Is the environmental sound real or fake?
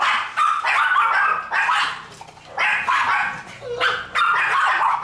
real